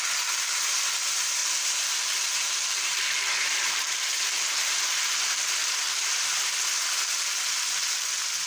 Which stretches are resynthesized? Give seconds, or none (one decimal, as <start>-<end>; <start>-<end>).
1.4-5.1; 5.6-6.5

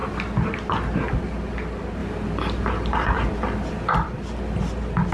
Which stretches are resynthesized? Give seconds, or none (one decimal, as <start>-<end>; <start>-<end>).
none

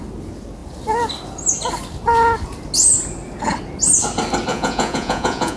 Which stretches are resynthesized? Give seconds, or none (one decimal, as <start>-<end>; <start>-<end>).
4.5-5.6

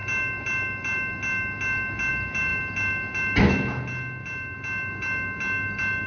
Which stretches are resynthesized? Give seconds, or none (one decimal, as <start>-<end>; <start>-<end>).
none

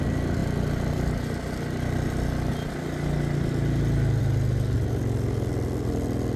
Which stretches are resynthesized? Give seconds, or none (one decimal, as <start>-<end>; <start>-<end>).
none